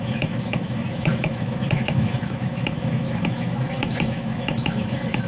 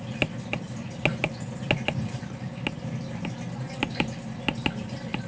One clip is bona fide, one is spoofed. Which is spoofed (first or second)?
first